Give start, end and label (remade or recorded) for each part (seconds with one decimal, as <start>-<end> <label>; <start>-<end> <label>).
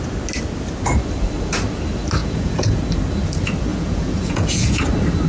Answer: 0.0-2.2 recorded; 2.2-2.8 remade; 2.8-3.7 recorded; 3.7-4.8 remade; 4.8-5.3 recorded